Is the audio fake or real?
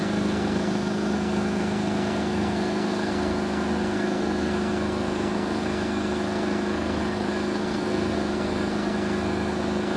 fake